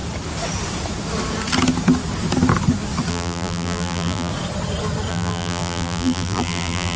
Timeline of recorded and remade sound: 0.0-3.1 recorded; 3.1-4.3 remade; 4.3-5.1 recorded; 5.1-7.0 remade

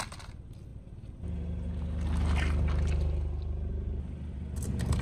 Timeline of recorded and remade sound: 0.0-5.0 recorded

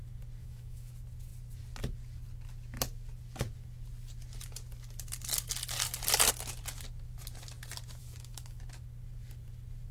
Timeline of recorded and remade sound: 0.0-0.4 recorded; 0.4-0.9 remade; 0.9-8.0 recorded; 8.0-8.6 remade; 8.6-9.9 recorded